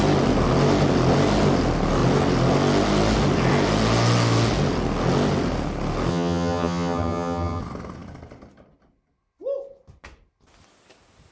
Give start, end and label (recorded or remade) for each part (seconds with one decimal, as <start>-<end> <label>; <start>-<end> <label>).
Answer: 0.0-6.1 recorded; 6.1-7.6 remade; 7.6-11.3 recorded